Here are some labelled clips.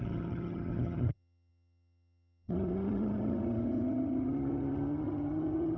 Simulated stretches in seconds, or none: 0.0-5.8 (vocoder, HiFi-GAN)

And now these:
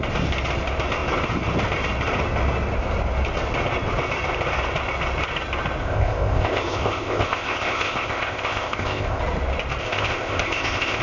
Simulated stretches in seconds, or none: 5.8-9.2 (codec, ZipCodec); 9.8-11.0

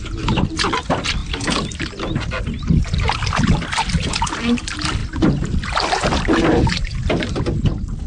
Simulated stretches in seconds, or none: none

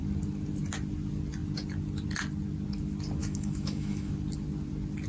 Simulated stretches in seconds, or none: 3.2-4.1 (autoencoder, DAC-VAE)

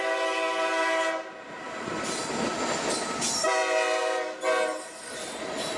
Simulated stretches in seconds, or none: none

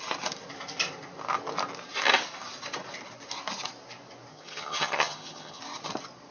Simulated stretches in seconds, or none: 4.3-5.6 (vocoder, HiFi-GAN)

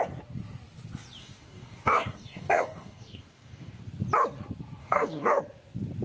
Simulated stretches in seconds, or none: 1.2-3.8 (codec, DAC); 4.8-5.4

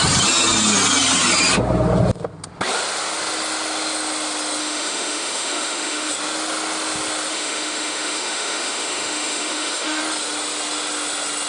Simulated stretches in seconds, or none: 4.6-6.1 (autoencoder, DAC-VAE); 7.3-10.0